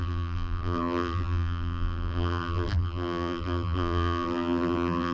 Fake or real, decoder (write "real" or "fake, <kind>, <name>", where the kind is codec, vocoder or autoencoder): fake, vocoder, BigVGAN v2